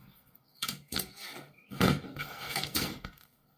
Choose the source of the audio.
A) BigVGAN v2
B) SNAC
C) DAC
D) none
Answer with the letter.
B